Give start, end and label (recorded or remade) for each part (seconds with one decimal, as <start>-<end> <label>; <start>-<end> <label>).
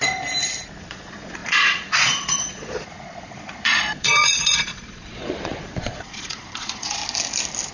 0.0-0.8 recorded; 0.8-7.0 remade; 7.0-7.7 recorded